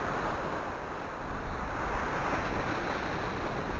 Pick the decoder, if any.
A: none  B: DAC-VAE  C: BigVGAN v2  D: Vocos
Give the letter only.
A